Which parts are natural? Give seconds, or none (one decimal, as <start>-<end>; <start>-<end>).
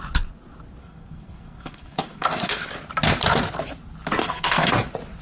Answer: 0.0-0.8; 2.6-4.2; 4.7-5.2